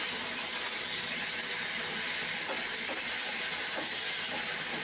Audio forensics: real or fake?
real